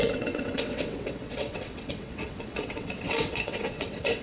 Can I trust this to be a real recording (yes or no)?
no